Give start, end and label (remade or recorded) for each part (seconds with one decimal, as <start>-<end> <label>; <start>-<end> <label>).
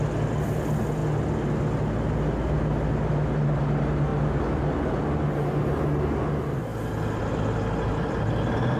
0.0-8.8 recorded